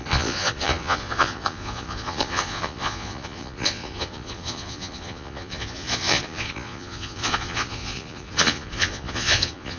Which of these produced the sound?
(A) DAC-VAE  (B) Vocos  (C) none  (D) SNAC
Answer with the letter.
B